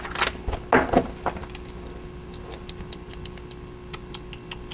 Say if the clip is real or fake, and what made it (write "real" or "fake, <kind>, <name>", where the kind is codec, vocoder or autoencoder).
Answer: real